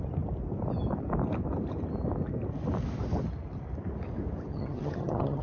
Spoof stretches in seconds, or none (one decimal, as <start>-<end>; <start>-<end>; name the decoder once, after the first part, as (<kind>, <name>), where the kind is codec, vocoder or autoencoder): 4.5-5.4 (vocoder, HiFi-GAN)